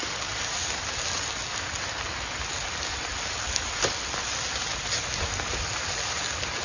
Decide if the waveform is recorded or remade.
recorded